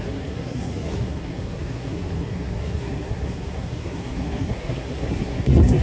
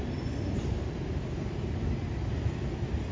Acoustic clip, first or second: second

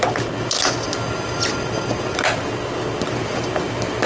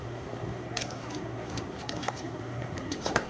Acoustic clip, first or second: first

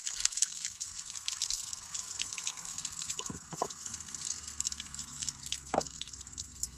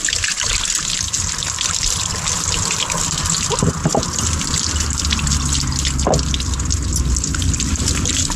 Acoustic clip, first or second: second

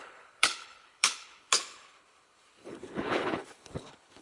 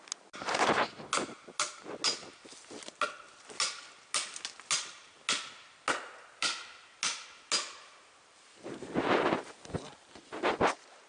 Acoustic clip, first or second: second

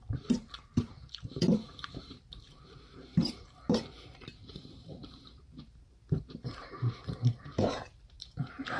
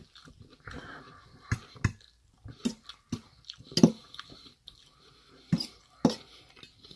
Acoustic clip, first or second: second